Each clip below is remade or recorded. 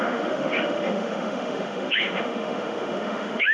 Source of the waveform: remade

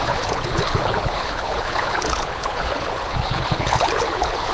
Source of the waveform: remade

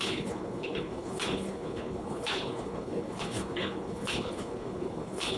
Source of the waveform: remade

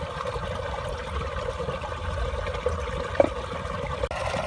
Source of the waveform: recorded